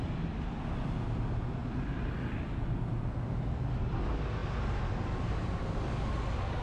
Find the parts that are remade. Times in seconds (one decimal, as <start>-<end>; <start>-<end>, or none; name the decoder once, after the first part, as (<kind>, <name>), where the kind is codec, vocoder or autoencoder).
1.6-2.6 (vocoder, BigVGAN v2)

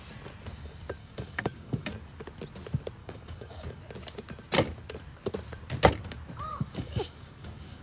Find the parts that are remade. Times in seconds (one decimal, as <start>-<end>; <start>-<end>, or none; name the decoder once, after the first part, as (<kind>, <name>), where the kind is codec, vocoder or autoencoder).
1.0-1.9 (codec, DAC); 3.0-3.8; 6.5-7.8

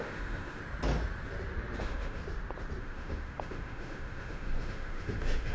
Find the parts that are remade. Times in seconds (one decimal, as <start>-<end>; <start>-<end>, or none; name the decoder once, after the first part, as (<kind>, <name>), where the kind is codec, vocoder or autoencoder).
0.0-0.6 (autoencoder, DAC-VAE); 1.8-2.2; 2.8-5.5

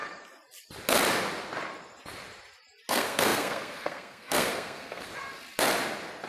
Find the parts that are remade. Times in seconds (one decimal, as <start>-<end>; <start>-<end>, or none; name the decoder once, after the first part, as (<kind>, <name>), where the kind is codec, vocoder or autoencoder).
2.9-5.1 (codec, SNAC)

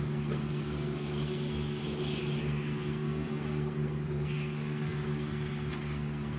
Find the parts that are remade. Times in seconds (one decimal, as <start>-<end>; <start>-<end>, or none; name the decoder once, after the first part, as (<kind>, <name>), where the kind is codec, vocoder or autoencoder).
0.0-1.8 (codec, SNAC); 2.4-6.4

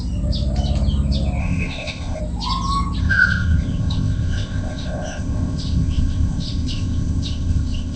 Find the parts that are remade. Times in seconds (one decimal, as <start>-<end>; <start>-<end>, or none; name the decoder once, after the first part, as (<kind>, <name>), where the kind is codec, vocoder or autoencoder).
1.4-2.2 (codec, ZipCodec); 3.0-8.0